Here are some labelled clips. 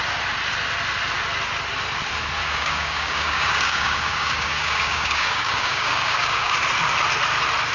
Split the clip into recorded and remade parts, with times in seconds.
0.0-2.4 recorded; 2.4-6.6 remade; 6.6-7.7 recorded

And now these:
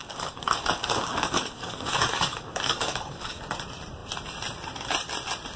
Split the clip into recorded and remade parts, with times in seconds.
0.0-3.4 remade; 3.4-5.6 recorded

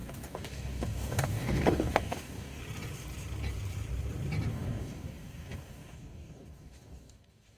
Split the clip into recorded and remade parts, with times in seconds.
0.0-2.6 remade; 2.6-4.5 recorded; 4.5-7.6 remade

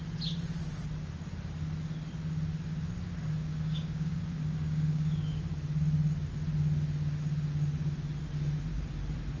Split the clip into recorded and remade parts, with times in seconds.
0.0-3.5 recorded; 3.5-5.4 remade; 5.4-9.4 recorded

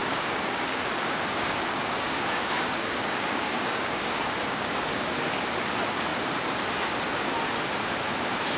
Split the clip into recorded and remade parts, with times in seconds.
0.0-5.0 remade; 5.0-8.6 recorded

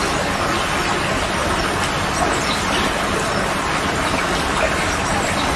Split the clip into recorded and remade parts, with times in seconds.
0.0-5.6 recorded

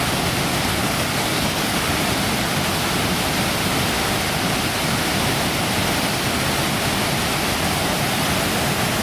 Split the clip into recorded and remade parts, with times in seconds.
0.0-0.8 recorded; 0.8-1.9 remade; 1.9-9.0 recorded

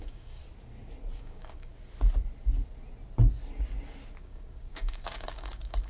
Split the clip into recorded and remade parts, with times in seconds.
0.0-0.4 remade; 0.4-1.2 recorded; 1.2-1.7 remade; 1.7-4.2 recorded; 4.2-5.9 remade